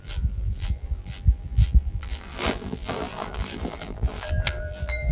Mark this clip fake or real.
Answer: fake